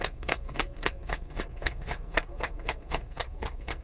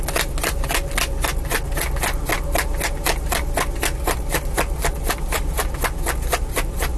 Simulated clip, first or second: first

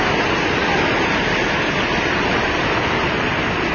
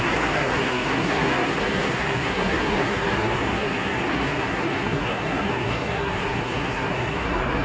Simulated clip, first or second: second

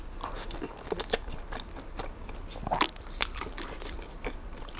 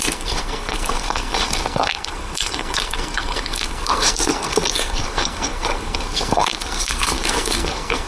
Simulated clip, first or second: second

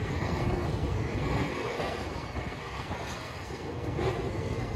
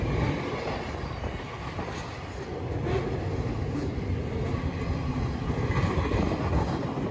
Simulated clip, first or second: first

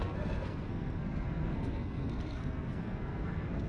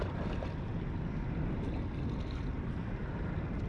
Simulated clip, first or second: first